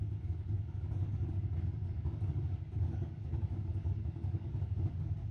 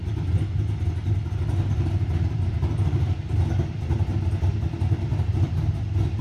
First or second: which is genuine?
second